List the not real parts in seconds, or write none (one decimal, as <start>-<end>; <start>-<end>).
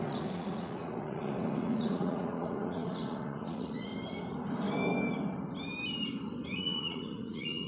0.0-3.9; 6.6-7.7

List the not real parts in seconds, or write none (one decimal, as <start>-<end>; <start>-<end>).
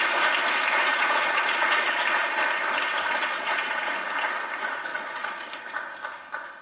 0.9-2.0; 3.1-3.9; 4.9-5.4